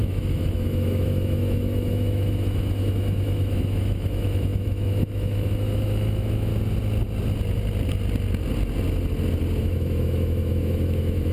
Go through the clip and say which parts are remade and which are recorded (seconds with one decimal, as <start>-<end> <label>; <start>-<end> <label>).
0.0-6.5 remade; 6.5-9.6 recorded; 9.6-11.3 remade